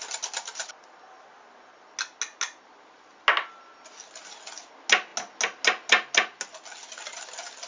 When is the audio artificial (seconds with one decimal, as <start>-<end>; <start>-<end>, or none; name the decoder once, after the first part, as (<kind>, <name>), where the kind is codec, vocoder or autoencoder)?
none

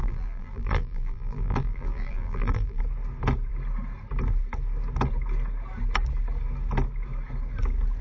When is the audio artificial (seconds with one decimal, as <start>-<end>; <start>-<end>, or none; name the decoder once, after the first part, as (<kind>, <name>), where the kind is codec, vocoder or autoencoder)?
0.0-2.8 (vocoder, BigVGAN v2)

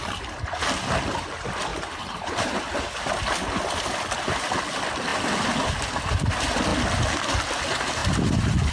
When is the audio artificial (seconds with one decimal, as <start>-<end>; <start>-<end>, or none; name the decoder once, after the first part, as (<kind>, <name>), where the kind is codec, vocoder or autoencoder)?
1.7-2.5 (vocoder, BigVGAN v2)

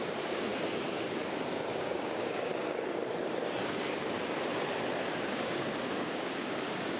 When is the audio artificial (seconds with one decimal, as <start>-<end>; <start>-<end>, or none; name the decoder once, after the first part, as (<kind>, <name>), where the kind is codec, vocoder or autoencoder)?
0.0-0.5 (codec, DAC); 1.7-2.5; 5.3-7.0

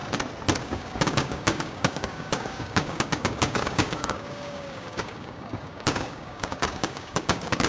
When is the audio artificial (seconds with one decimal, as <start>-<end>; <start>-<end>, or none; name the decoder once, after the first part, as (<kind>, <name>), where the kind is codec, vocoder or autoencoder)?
0.6-7.7 (codec, DAC)

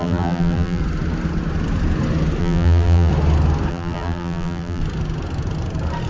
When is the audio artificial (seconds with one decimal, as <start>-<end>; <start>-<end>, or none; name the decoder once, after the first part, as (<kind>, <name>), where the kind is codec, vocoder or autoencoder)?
0.0-0.8 (vocoder, BigVGAN v2); 2.4-3.1; 3.7-4.8

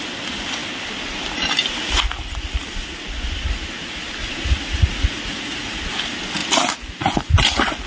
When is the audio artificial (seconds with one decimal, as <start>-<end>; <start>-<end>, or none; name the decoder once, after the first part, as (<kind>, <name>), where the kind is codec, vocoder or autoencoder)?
4.2-5.8 (vocoder, Vocos)

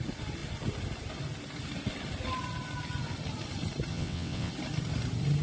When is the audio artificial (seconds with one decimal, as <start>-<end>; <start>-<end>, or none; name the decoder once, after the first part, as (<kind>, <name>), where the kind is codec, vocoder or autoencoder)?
3.9-4.5 (vocoder, WaveNeXt)